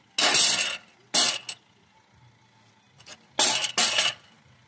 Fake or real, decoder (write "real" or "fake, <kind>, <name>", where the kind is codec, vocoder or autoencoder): real